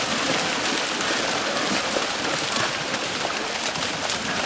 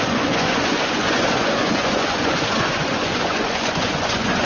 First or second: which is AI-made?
second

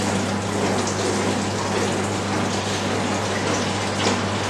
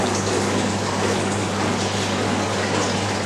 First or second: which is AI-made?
second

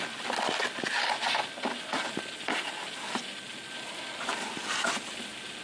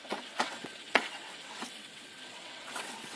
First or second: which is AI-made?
second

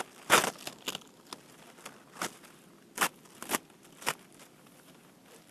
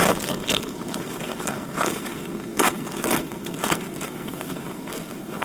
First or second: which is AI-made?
second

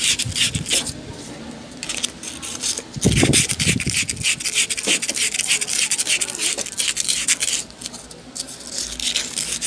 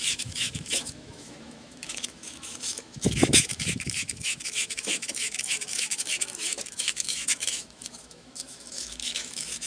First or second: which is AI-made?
second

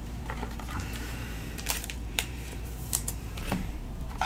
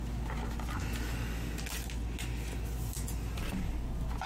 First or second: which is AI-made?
first